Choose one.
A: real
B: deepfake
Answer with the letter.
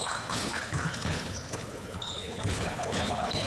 B